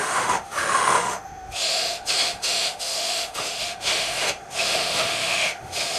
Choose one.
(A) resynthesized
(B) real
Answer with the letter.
A